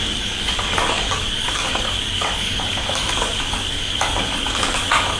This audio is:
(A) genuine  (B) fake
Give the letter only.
B